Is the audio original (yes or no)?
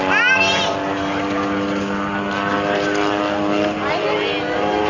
yes